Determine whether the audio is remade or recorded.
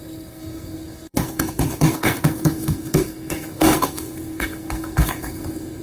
remade